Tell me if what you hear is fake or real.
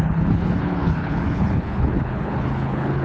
fake